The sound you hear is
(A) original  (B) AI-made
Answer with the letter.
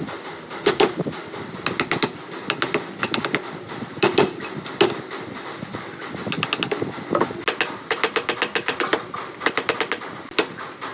A